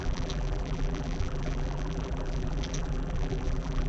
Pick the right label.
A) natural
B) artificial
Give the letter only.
B